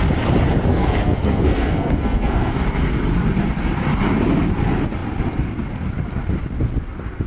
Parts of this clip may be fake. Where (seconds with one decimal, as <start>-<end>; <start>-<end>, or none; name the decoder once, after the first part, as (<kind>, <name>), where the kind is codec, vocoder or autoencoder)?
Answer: 0.7-2.5 (codec, SNAC)